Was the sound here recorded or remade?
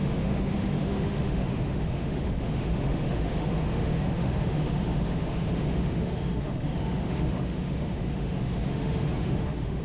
remade